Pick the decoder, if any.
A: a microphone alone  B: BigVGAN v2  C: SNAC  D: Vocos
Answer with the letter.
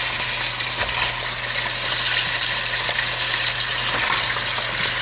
A